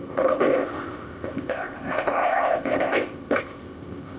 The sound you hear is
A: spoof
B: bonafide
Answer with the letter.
A